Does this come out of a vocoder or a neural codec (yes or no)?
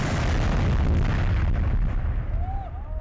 no